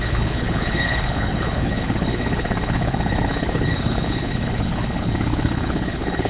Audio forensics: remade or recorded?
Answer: remade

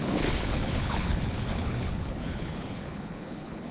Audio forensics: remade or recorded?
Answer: remade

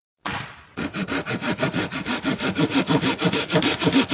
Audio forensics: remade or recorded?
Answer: recorded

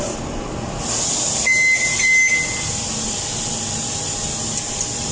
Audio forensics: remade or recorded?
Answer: recorded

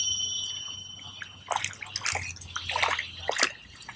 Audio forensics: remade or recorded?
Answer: recorded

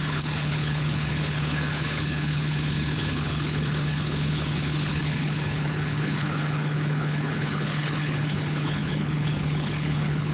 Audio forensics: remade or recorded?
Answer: remade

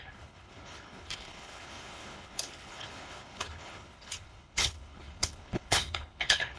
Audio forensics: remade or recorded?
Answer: remade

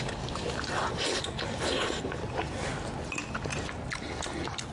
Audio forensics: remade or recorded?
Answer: recorded